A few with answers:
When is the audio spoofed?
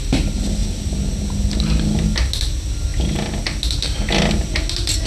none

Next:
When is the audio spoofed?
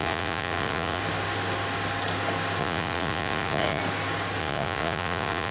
0.0-1.0; 2.6-3.8; 4.4-5.5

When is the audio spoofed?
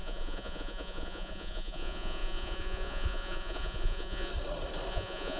0.0-4.3; 4.9-5.4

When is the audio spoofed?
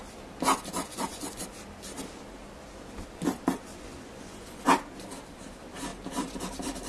0.9-1.4; 3.7-4.6